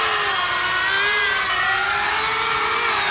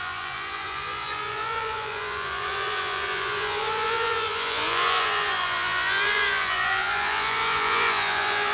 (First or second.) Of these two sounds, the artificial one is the second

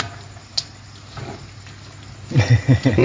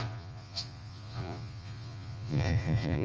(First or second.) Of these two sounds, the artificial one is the second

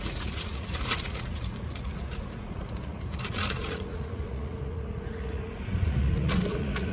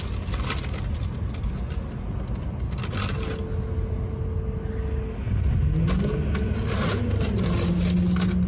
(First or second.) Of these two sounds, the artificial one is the first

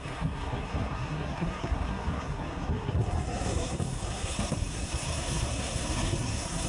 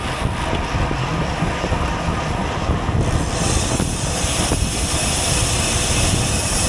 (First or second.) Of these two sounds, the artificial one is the first